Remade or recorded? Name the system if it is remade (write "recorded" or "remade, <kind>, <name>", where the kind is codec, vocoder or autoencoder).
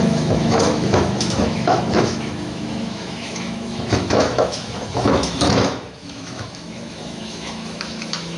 remade, autoencoder, DAC-VAE